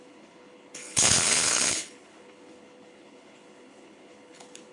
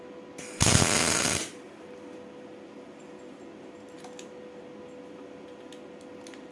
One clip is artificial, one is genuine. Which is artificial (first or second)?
first